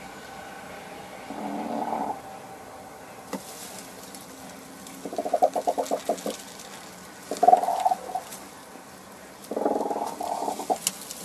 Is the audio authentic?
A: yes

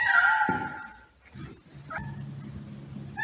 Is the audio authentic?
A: yes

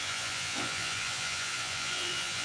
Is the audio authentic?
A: no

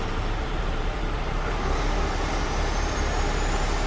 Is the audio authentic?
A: no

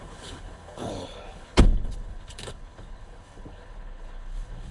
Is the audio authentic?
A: no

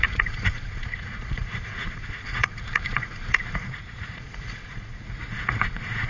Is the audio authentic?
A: no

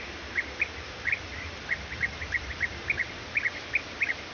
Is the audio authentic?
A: yes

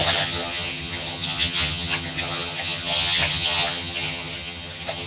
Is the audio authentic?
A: no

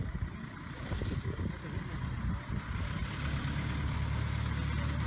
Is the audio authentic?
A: yes